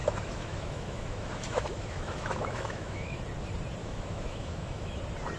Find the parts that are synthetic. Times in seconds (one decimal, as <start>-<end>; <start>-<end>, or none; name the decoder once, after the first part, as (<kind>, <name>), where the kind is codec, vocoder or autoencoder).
0.0-3.2 (autoencoder, DAC-VAE); 3.8-5.0